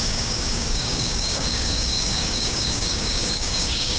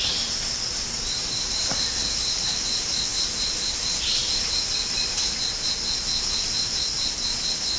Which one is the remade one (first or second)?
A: first